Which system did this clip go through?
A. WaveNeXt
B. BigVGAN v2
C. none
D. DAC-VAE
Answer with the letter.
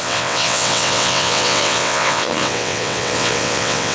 A